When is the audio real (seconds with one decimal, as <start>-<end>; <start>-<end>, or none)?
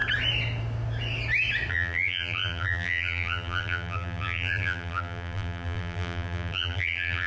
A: 0.0-1.7